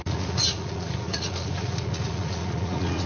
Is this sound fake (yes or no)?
yes